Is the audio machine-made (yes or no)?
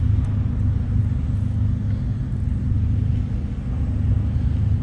no